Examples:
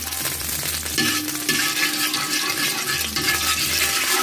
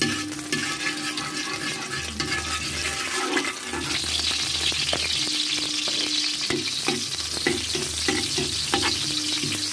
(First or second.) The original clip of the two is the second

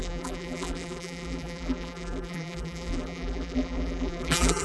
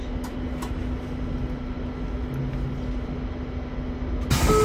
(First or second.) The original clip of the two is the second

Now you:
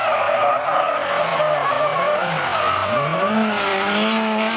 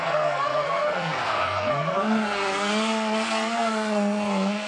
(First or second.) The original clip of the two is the first